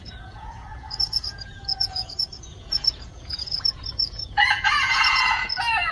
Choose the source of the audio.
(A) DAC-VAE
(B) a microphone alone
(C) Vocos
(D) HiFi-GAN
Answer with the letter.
C